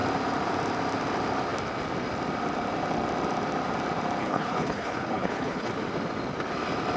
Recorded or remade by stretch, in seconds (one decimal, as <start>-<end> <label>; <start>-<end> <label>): 0.0-4.2 recorded; 4.2-5.7 remade; 5.7-7.0 recorded